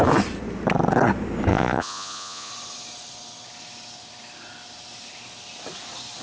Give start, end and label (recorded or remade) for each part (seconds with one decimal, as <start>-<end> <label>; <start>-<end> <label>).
0.0-1.5 recorded; 1.5-2.5 remade; 2.5-6.2 recorded